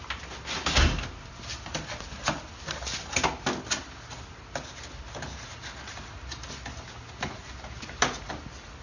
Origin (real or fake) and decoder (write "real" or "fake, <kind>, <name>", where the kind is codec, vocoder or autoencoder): real